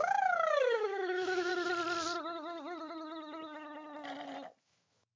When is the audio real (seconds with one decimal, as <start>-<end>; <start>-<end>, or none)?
1.5-4.6